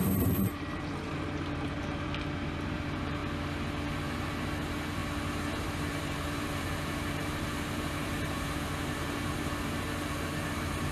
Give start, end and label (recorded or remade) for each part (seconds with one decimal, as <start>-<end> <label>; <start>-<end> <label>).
0.0-3.2 remade; 3.2-4.0 recorded; 4.0-5.0 remade; 5.0-5.6 recorded; 5.6-10.9 remade